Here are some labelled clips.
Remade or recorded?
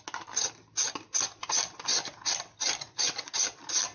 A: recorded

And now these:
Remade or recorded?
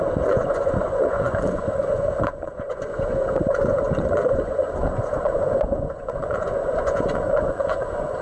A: remade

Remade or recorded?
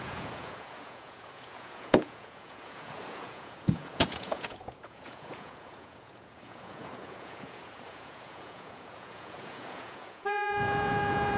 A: remade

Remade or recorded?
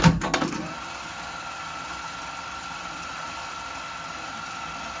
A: recorded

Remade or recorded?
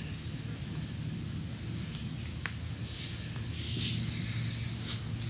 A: recorded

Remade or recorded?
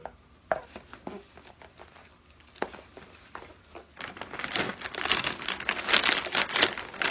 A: recorded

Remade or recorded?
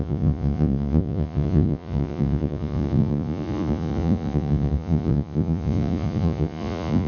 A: remade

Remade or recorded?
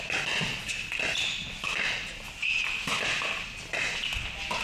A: recorded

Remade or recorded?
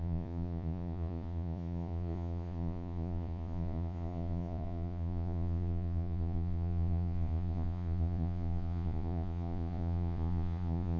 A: remade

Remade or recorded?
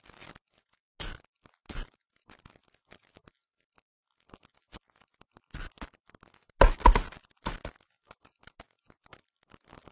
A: recorded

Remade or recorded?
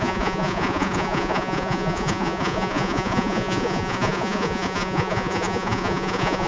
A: remade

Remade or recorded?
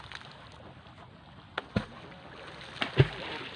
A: recorded